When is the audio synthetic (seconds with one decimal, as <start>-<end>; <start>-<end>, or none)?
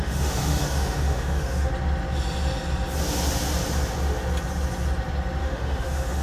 0.0-1.7; 5.4-6.2